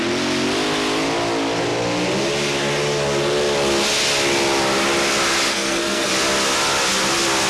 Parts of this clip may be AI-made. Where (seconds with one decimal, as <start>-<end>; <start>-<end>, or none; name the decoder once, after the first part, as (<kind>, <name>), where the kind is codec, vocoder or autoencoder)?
5.5-6.1 (codec, SNAC)